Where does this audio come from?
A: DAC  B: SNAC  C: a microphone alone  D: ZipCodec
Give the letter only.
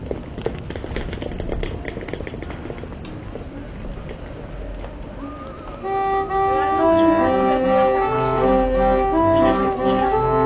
C